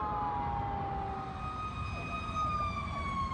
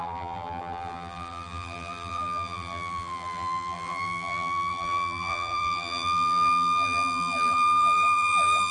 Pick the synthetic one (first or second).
second